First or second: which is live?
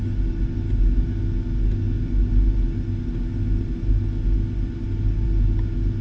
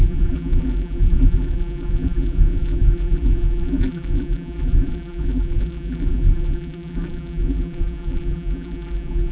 first